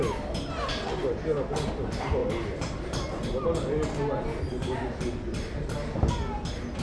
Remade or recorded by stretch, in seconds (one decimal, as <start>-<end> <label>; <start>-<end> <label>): 0.0-6.8 recorded